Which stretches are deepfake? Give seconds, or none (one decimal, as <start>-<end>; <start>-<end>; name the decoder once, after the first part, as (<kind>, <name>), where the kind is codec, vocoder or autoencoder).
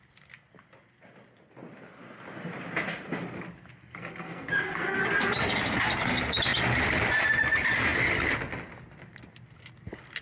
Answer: 3.8-5.0 (codec, SNAC)